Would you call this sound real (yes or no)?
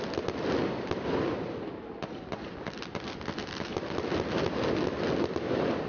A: yes